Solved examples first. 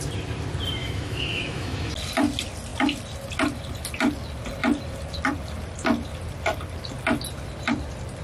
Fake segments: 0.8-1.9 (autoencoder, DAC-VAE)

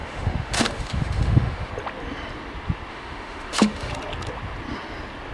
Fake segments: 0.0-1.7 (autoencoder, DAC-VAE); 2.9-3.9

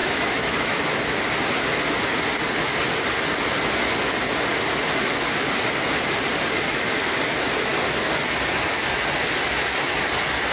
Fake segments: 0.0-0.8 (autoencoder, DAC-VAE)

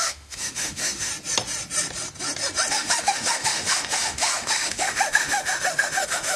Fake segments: 0.0-1.1 (autoencoder, DAC-VAE); 2.7-6.4

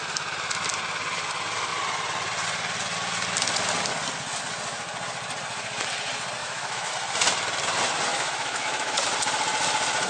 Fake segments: 6.4-6.9 (autoencoder, DAC-VAE); 8.1-9.0

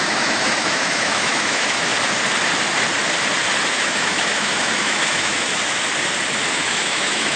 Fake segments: 0.0-1.9 (autoencoder, DAC-VAE); 3.7-5.5; 6.5-7.4